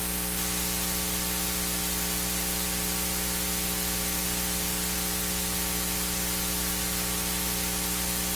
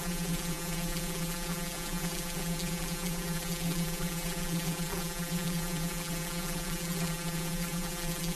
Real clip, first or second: first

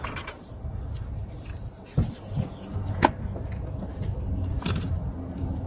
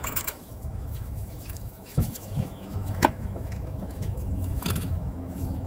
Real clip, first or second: first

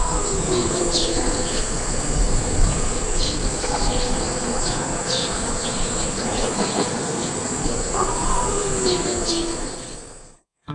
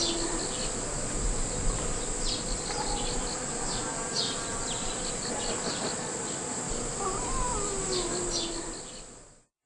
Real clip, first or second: second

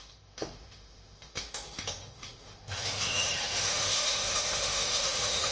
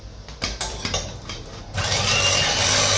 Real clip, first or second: second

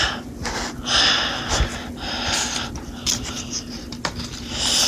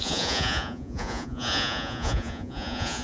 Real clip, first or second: first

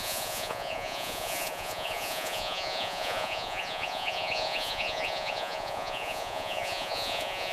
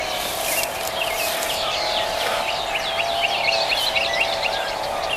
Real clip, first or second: second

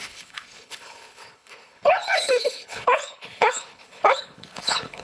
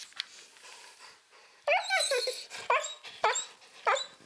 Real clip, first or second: second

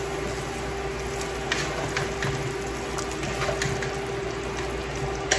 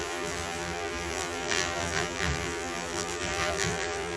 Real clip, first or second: first